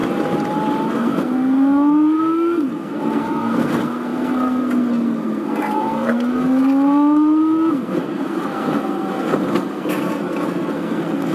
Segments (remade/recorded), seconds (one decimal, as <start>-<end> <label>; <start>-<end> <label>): 0.0-0.9 recorded; 0.9-11.3 remade